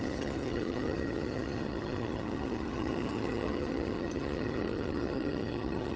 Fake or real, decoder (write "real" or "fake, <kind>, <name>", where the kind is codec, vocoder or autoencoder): fake, vocoder, HiFi-GAN